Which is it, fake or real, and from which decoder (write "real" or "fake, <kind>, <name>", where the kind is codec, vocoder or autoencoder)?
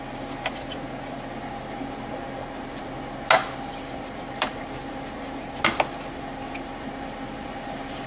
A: real